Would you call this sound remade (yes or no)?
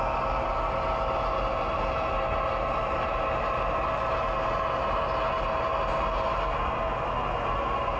no